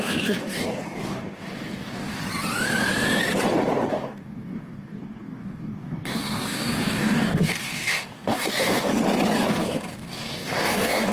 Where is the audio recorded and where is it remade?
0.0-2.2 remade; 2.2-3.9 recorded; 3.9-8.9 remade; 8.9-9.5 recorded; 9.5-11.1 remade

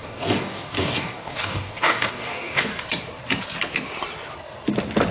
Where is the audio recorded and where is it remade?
0.0-2.7 remade; 2.7-5.1 recorded

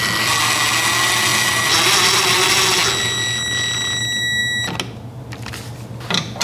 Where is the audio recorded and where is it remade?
0.0-6.4 recorded

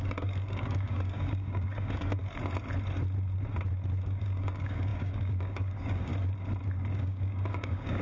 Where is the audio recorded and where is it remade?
0.0-2.2 remade; 2.2-4.2 recorded; 4.2-6.1 remade; 6.1-7.0 recorded; 7.0-8.0 remade

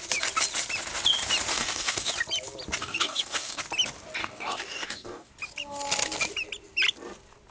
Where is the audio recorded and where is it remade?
0.0-1.5 recorded; 1.5-2.1 remade; 2.1-2.8 recorded; 2.8-3.6 remade; 3.6-4.2 recorded; 4.2-5.3 remade; 5.3-7.5 recorded

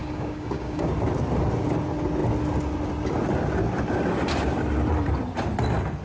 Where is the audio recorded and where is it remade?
0.0-0.9 remade; 0.9-6.0 recorded